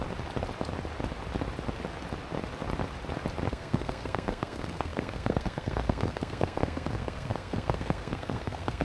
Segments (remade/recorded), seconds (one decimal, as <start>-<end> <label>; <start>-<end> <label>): 0.0-3.5 recorded; 3.5-8.8 remade